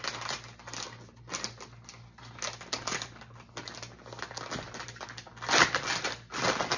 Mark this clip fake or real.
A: real